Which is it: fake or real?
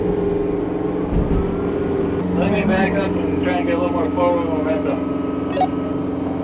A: real